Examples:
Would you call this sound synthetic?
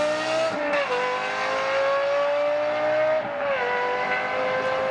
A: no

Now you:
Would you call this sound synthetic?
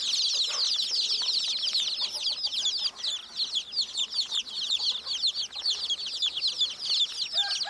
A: no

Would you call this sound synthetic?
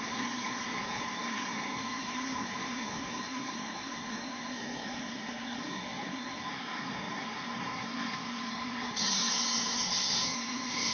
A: yes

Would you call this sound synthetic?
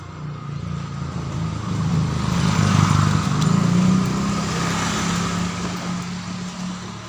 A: no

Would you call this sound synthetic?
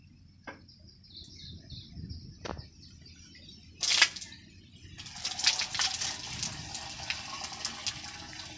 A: no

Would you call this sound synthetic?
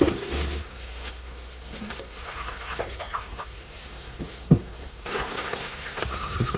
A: yes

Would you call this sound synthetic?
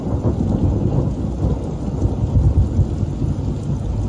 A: no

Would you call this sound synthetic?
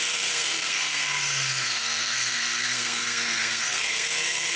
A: yes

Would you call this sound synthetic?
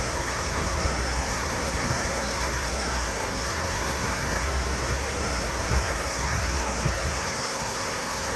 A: yes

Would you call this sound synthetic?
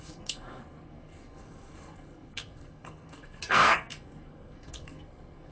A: yes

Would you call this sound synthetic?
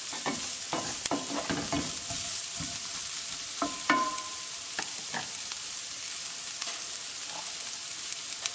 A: no